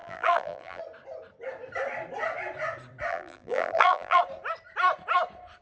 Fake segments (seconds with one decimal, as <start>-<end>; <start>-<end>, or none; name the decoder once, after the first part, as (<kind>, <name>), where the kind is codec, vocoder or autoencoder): 0.0-0.8 (vocoder, BigVGAN v2); 3.1-4.2